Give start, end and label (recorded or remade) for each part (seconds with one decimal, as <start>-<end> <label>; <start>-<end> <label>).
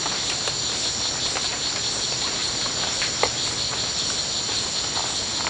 0.0-5.5 recorded